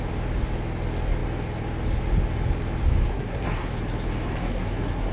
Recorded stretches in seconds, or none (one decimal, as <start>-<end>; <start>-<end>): 0.0-3.1; 3.7-4.4